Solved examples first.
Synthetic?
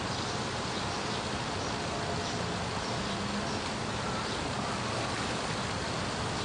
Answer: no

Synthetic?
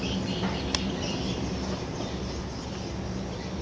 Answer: no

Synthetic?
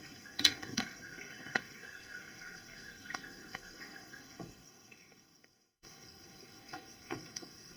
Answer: yes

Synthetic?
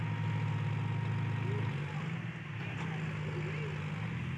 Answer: no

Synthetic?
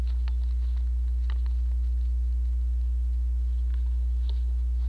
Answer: no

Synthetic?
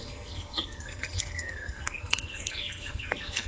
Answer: yes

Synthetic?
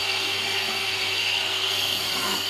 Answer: yes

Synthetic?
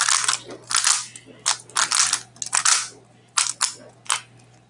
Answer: no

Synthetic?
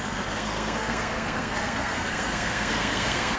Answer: yes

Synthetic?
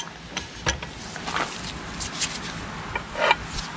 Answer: no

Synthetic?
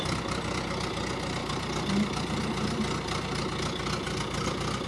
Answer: no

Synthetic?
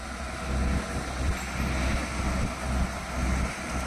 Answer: no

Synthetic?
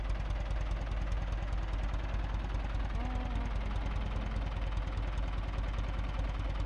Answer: no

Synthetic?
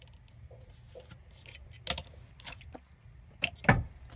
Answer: no